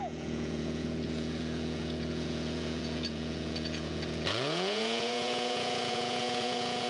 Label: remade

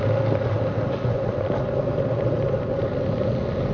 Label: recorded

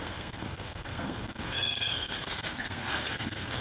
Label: remade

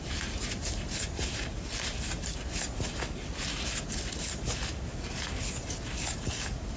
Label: recorded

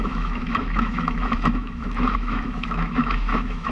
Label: remade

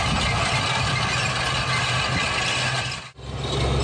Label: recorded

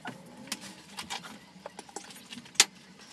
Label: recorded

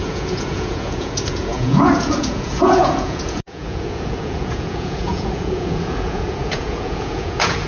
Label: remade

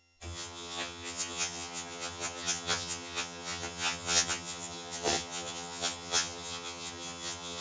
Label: remade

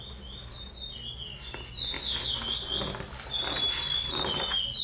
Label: recorded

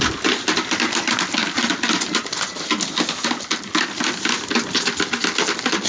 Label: recorded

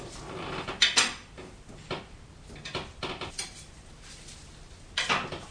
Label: recorded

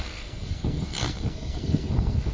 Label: remade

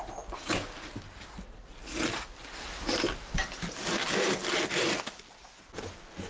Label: recorded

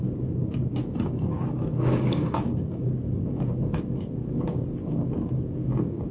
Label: remade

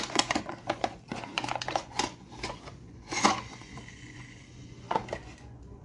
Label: remade